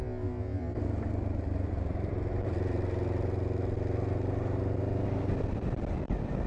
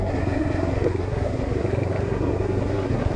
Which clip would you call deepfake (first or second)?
second